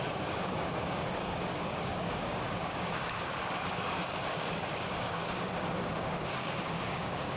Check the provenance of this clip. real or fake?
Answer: fake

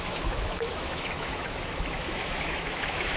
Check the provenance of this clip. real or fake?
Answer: fake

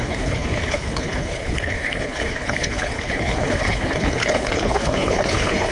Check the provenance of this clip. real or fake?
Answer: fake